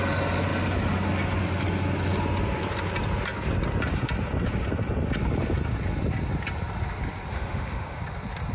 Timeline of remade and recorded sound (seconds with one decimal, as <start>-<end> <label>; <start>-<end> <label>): 0.0-7.3 recorded; 7.3-8.0 remade; 8.0-8.5 recorded